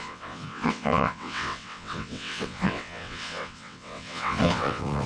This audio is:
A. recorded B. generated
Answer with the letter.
B